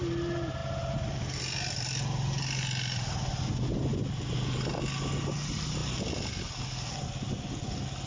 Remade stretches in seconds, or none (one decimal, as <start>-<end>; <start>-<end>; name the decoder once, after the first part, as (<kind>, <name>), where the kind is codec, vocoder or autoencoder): none